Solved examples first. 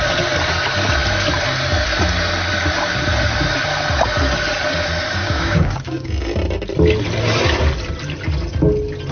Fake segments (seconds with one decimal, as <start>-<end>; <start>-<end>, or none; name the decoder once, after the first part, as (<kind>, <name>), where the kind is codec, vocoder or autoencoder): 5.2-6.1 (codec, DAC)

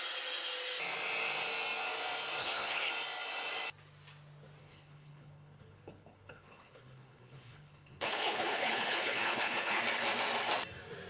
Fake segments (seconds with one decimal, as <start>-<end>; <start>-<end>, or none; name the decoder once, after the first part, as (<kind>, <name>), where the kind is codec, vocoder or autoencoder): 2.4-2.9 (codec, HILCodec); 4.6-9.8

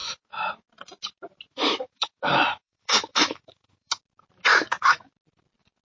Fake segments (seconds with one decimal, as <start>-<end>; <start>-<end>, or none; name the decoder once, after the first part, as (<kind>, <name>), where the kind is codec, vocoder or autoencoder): 0.0-0.5 (autoencoder, DAC-VAE); 1.5-3.9; 4.5-5.1

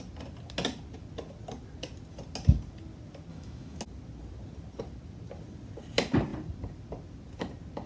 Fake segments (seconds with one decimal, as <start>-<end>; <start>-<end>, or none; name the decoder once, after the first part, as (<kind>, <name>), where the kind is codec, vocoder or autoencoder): 3.3-3.8 (autoencoder, DAC-VAE)

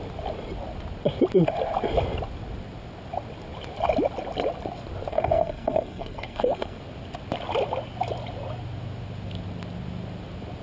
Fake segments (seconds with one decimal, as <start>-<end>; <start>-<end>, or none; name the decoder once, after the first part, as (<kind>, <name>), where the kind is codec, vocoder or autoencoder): 5.1-6.8 (codec, SNAC)

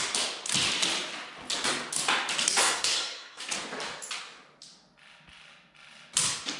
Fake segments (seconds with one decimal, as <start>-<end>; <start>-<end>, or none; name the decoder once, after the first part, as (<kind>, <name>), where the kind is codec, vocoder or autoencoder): 2.6-3.4 (codec, SNAC)